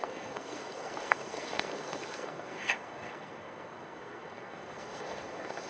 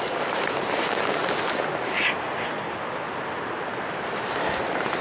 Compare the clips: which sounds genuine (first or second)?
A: second